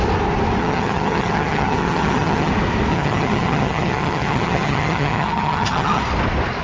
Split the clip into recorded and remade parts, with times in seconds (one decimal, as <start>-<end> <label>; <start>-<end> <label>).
0.0-0.6 recorded; 0.6-2.5 remade; 2.5-2.9 recorded; 2.9-6.0 remade; 6.0-6.6 recorded